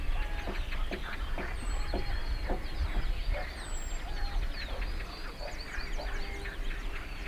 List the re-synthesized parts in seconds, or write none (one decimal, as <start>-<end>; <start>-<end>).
none